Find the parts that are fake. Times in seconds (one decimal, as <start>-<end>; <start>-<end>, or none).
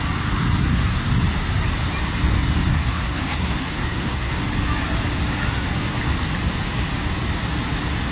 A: 0.6-1.1; 2.7-4.4